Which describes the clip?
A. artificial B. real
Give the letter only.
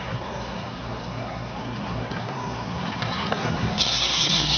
A